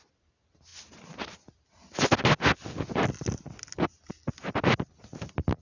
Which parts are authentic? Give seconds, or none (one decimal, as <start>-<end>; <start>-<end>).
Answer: 0.0-5.6